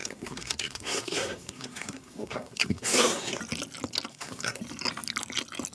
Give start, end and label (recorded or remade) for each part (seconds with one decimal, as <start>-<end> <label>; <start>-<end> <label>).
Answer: 0.0-3.4 remade; 3.4-4.1 recorded; 4.1-4.6 remade; 4.6-5.7 recorded